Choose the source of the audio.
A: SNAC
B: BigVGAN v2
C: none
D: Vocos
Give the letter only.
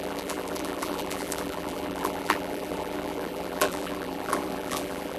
B